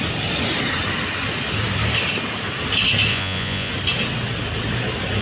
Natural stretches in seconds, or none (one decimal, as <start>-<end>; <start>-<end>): 0.0-3.1; 3.7-5.2